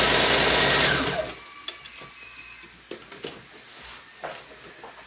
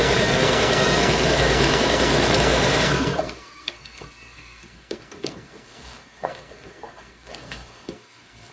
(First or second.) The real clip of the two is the first